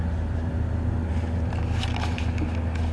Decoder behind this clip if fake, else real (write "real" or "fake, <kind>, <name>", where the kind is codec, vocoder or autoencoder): real